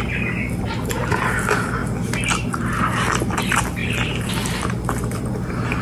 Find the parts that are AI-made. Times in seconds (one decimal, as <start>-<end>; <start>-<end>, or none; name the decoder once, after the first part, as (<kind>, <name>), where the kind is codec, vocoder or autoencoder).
3.8-4.3 (vocoder, BigVGAN v2)